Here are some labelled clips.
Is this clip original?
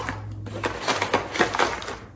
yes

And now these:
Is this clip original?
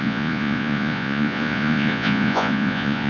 no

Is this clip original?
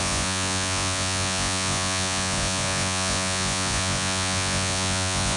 no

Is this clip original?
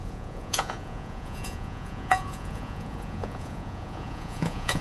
no